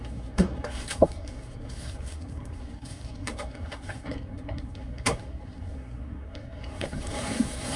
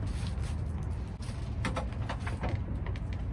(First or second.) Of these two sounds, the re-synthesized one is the first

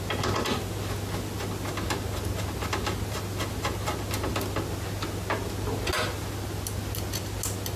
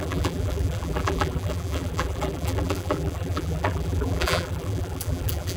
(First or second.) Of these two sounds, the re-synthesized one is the second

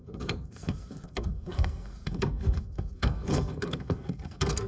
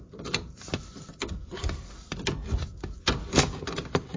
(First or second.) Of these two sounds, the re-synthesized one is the first